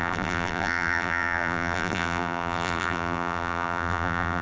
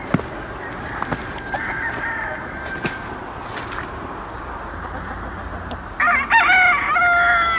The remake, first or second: first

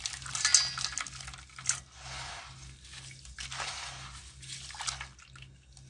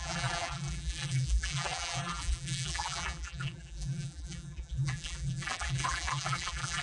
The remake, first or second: second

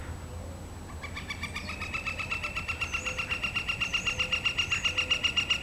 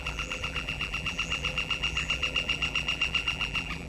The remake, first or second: second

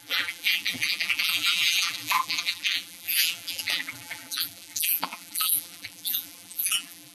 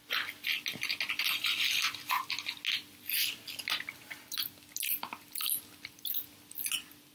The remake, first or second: first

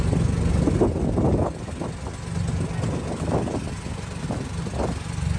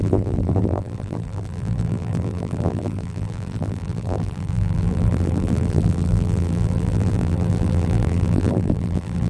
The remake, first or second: second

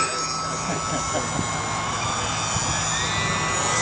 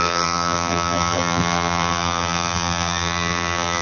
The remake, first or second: second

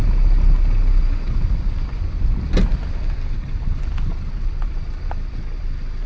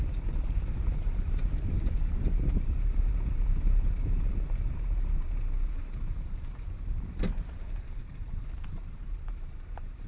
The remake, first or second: second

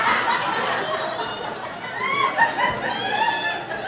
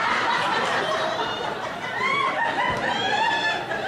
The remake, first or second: second